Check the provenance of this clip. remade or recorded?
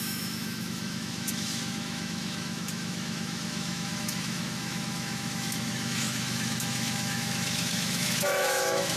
remade